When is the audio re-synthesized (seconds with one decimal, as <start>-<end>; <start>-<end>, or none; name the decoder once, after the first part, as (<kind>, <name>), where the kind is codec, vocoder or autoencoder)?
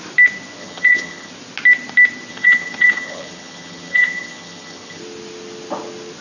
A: 0.6-1.3 (vocoder, HiFi-GAN); 2.3-5.0